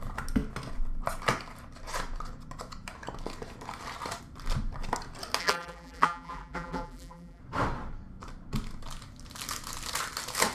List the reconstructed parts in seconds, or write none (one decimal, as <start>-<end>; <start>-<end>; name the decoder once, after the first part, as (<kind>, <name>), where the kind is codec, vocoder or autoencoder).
5.4-7.4 (vocoder, BigVGAN v2)